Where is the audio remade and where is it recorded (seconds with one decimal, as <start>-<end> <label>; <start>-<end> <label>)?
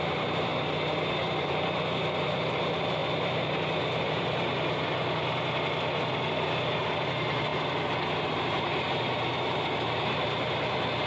0.0-0.5 remade; 0.5-1.1 recorded; 1.1-4.5 remade; 4.5-7.1 recorded; 7.1-7.5 remade; 7.5-8.4 recorded; 8.4-11.1 remade